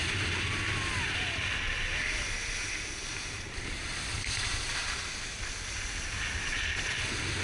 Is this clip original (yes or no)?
yes